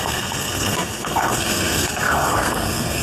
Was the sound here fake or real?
fake